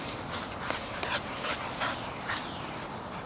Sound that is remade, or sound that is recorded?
recorded